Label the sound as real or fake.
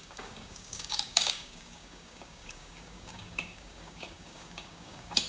fake